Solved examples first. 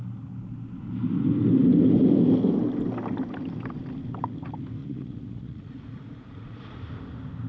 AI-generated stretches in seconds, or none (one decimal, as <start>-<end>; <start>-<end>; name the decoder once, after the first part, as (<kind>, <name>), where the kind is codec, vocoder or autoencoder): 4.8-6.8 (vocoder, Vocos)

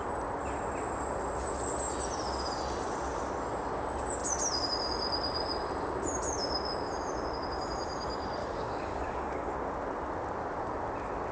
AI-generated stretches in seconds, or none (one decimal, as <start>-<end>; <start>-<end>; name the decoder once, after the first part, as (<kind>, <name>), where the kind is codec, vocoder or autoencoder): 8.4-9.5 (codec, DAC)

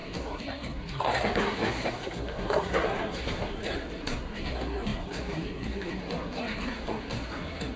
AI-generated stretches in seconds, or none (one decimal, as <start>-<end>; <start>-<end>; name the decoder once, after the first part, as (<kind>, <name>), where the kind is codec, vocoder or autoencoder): 0.0-7.8 (codec, SNAC)